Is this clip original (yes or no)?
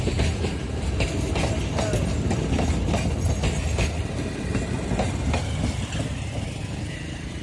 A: yes